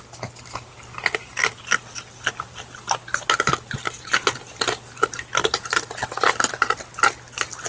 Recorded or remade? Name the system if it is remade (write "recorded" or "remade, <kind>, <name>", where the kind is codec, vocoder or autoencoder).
recorded